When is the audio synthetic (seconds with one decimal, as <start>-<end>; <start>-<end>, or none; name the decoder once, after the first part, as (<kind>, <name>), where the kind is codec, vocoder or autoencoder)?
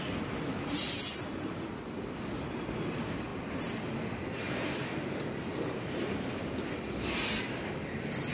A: none